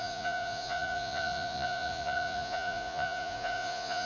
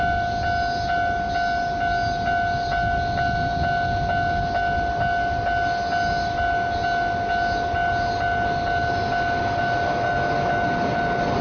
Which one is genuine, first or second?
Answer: second